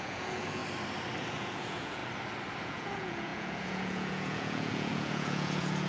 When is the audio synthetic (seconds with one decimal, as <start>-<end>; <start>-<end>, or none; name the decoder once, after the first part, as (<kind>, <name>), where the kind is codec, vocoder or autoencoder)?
0.0-0.6 (vocoder, Vocos); 1.3-2.0; 2.6-5.9